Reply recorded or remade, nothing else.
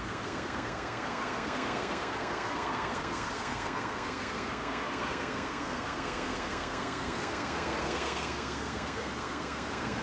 remade